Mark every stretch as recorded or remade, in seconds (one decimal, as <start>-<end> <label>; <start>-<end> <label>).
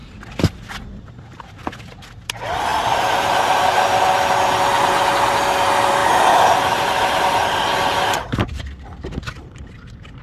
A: 0.0-6.0 recorded; 6.0-10.2 remade